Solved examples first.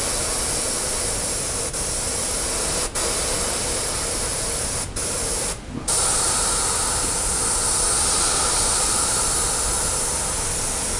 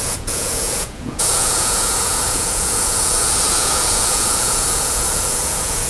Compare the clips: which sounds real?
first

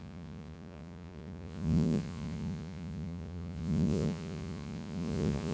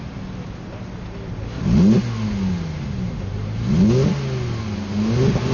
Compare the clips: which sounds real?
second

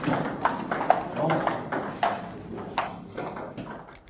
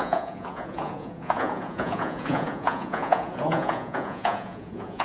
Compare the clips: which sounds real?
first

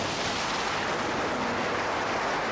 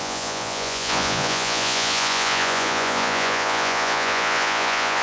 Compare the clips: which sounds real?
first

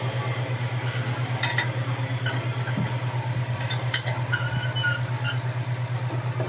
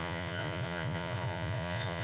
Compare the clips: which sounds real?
first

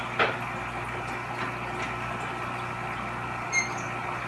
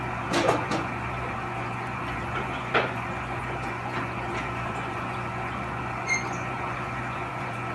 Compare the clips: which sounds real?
first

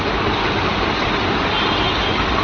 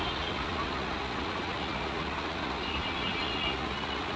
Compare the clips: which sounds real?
first